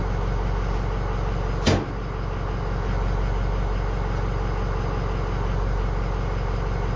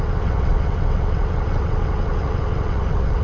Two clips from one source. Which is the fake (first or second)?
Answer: second